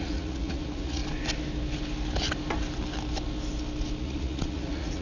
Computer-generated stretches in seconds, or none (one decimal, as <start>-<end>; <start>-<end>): 0.0-1.0; 4.0-5.0